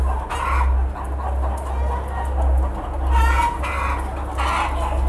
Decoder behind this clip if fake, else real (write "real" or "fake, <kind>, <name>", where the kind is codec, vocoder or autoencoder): real